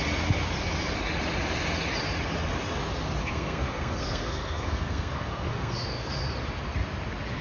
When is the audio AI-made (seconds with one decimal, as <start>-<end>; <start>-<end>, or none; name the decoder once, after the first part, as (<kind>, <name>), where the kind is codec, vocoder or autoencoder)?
3.2-6.2 (codec, SNAC)